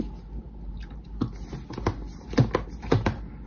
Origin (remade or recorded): recorded